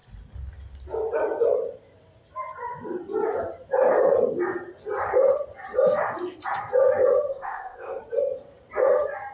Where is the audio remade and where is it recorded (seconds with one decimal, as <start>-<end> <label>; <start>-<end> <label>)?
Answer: 0.0-7.3 recorded; 7.3-8.0 remade; 8.0-9.3 recorded